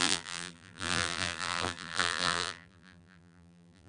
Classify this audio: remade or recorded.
remade